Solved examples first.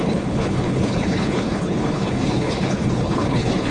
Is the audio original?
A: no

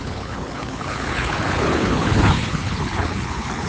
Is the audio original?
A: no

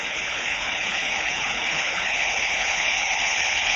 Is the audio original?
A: no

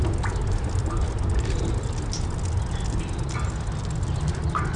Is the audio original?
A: yes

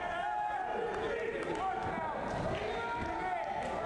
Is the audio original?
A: yes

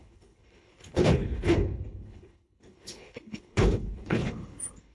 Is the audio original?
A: no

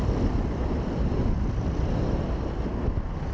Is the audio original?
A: yes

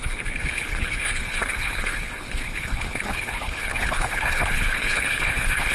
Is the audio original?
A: no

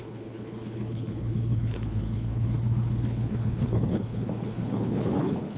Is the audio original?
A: no